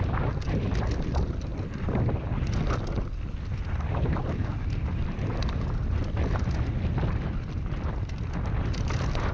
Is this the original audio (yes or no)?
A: yes